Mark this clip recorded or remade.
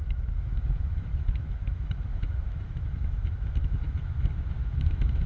remade